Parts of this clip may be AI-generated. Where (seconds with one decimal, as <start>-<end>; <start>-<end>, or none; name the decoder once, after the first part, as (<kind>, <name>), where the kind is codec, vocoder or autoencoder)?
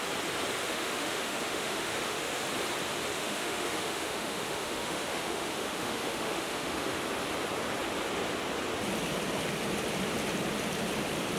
0.6-2.4 (autoencoder, DAC-VAE); 3.1-7.0